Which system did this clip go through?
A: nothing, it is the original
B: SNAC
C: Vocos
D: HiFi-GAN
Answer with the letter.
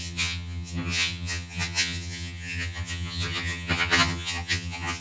D